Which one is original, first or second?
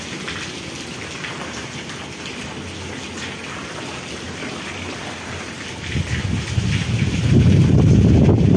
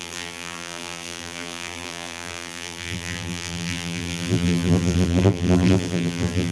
first